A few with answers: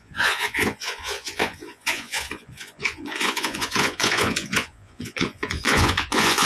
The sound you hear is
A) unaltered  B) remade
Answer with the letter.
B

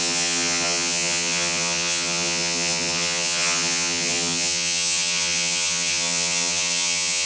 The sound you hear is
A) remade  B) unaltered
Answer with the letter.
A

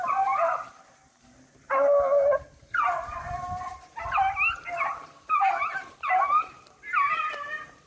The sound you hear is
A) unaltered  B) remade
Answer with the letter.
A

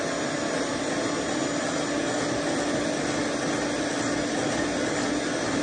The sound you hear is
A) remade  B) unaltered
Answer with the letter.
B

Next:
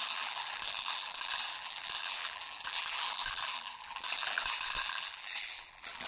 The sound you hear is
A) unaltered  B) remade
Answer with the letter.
B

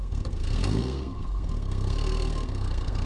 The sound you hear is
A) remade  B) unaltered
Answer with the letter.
A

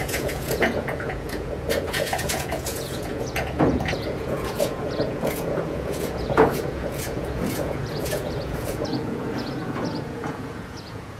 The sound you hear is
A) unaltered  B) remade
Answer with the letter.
B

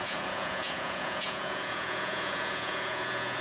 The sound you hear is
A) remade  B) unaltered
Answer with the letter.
A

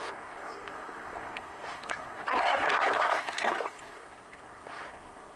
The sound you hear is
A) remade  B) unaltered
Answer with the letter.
A